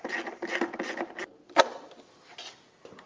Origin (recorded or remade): recorded